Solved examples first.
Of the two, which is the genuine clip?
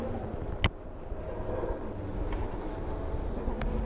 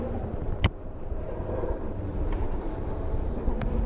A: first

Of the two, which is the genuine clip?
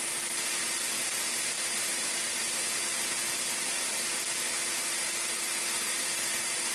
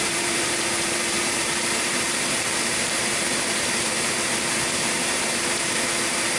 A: first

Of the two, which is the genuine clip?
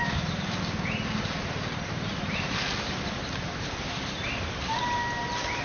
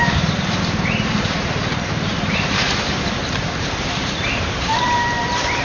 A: first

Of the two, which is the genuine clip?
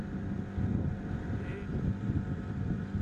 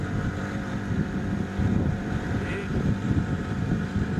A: first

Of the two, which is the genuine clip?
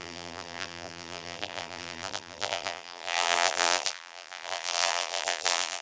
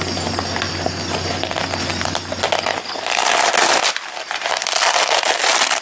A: second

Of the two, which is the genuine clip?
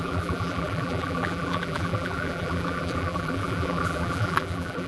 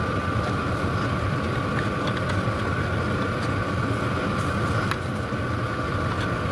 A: second